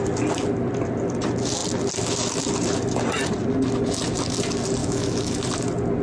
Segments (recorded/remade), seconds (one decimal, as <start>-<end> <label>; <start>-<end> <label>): 0.0-4.8 recorded; 4.8-5.4 remade; 5.4-6.0 recorded